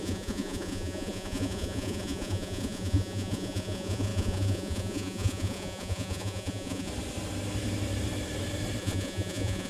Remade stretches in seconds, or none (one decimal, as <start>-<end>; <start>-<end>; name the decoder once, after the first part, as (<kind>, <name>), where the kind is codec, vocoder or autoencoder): 0.0-6.9 (vocoder, Vocos); 8.8-9.7